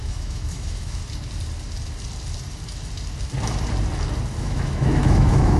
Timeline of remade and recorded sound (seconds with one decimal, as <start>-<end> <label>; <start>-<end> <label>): 0.0-1.0 remade; 1.0-4.4 recorded; 4.4-5.6 remade